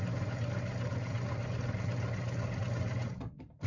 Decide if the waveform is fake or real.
real